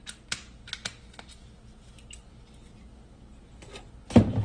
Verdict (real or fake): real